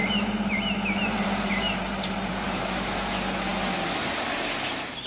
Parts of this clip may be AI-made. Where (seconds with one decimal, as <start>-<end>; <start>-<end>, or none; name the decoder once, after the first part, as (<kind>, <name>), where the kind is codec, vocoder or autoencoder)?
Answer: 0.0-3.1 (vocoder, BigVGAN v2)